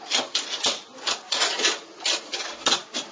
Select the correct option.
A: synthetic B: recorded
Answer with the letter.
B